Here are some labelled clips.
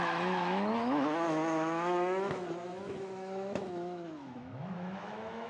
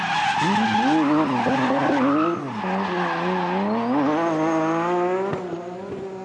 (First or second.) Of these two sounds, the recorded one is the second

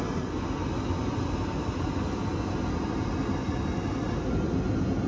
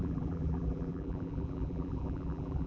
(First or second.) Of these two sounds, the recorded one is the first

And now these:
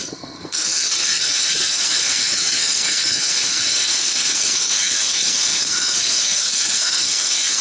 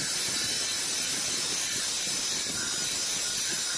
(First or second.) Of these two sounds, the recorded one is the second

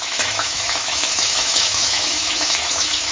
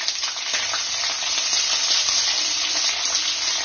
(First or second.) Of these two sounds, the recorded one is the second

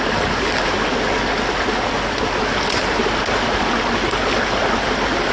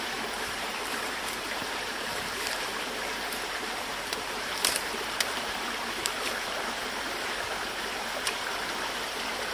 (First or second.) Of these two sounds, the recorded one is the first